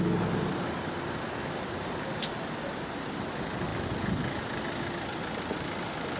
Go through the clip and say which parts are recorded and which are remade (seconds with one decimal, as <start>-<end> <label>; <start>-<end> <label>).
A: 0.0-6.2 recorded